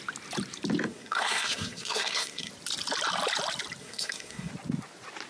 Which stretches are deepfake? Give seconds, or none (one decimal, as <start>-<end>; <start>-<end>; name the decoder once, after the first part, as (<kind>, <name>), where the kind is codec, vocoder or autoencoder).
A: 0.9-2.5 (codec, SNAC); 3.8-4.5